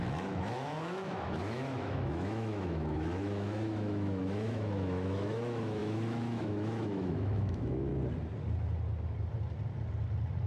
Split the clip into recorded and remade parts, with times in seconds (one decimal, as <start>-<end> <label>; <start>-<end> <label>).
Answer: 0.0-7.9 remade; 7.9-10.5 recorded